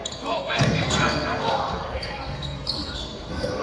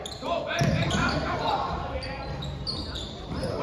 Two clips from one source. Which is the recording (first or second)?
second